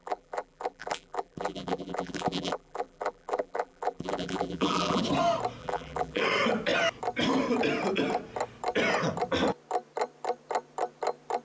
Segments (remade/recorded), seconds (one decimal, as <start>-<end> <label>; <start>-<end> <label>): 0.0-5.0 remade; 5.0-5.6 recorded; 5.6-6.2 remade; 6.2-11.4 recorded